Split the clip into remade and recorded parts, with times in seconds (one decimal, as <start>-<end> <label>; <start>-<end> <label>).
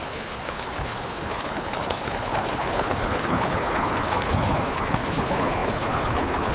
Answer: 0.0-6.5 remade